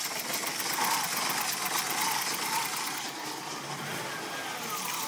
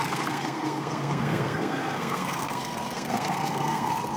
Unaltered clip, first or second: first